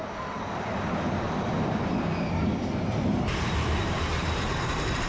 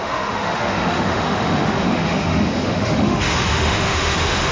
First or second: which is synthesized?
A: second